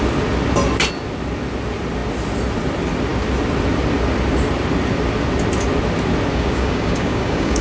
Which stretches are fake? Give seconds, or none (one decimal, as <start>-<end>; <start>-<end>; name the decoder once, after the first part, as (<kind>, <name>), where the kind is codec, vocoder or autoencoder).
6.3-7.6 (codec, DAC)